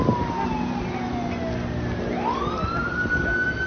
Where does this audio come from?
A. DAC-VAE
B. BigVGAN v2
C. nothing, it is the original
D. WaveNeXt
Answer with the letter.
C